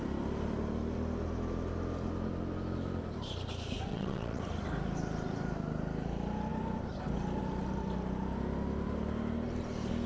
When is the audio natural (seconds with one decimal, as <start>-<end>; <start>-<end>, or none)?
0.0-3.9; 4.4-10.1